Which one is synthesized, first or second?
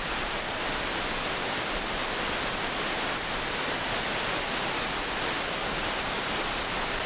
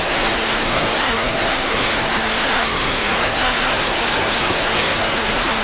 second